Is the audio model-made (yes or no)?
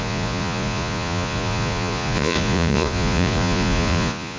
yes